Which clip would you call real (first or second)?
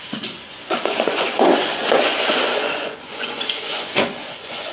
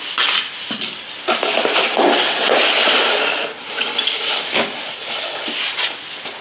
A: second